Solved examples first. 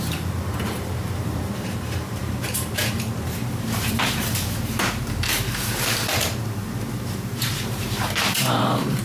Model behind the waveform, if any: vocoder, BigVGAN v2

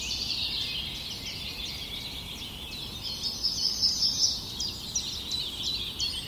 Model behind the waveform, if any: none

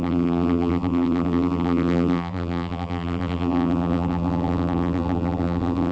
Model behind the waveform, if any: vocoder, BigVGAN v2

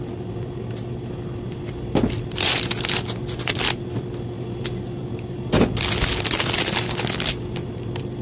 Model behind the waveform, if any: none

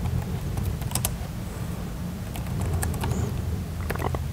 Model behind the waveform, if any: none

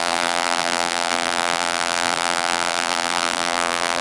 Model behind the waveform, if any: vocoder, BigVGAN v2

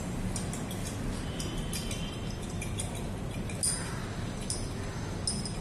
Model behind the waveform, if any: none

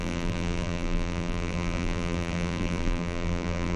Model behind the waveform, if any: vocoder, BigVGAN v2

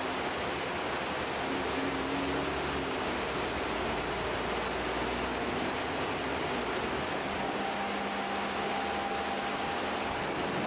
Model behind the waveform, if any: none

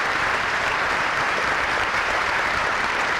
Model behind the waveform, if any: vocoder, BigVGAN v2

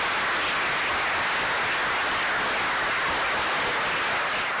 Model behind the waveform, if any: none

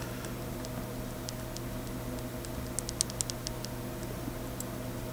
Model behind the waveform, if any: none